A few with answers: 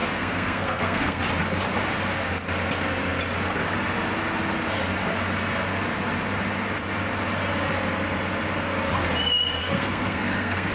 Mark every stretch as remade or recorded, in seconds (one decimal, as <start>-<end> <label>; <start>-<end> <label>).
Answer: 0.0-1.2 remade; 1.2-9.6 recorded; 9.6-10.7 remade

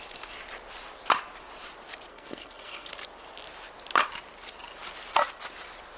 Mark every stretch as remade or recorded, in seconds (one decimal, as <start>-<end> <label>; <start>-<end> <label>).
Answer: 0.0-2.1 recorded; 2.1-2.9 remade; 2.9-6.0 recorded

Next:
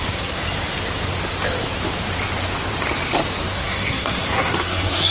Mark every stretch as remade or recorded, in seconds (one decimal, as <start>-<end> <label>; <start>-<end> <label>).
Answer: 0.0-0.4 remade; 0.4-3.5 recorded; 3.5-5.1 remade

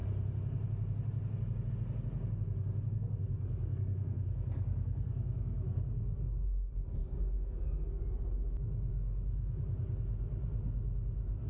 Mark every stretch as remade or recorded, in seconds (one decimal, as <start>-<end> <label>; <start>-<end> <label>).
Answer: 0.0-3.2 recorded; 3.2-8.0 remade; 8.0-8.9 recorded; 8.9-9.6 remade; 9.6-11.5 recorded

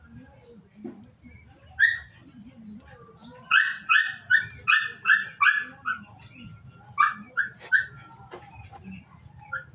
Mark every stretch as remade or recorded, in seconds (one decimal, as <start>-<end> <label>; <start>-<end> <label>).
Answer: 0.0-9.7 recorded

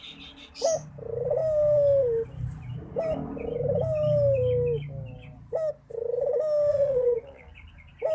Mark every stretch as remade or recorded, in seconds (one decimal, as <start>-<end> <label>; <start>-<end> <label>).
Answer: 0.0-6.7 recorded; 6.7-7.5 remade; 7.5-8.1 recorded

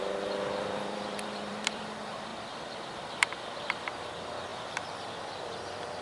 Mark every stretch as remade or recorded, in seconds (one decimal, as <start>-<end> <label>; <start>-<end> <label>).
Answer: 0.0-0.6 recorded; 0.6-6.0 remade

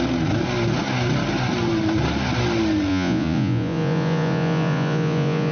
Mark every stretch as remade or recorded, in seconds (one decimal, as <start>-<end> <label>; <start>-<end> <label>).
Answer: 0.0-2.9 recorded; 2.9-5.5 remade